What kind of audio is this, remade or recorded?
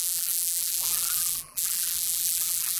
remade